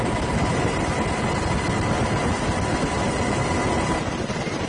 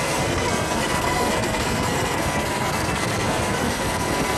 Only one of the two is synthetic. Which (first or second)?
second